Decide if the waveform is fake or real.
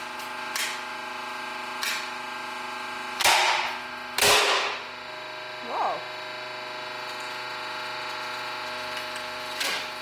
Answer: real